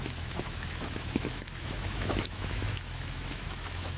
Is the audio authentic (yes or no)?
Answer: no